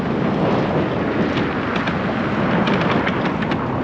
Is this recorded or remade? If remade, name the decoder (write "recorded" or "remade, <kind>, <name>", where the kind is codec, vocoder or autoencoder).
recorded